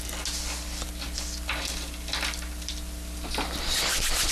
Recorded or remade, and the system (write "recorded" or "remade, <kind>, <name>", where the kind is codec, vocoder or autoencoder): recorded